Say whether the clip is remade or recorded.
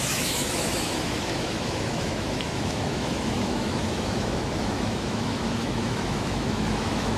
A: remade